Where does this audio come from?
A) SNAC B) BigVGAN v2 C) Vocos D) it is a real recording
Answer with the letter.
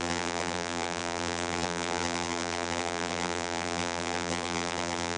B